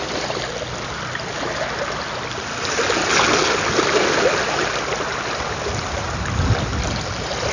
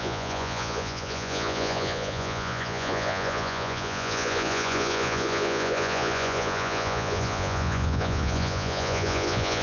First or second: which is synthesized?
second